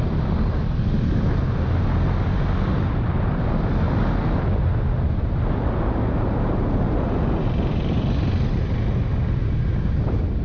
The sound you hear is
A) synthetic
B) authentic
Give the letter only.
B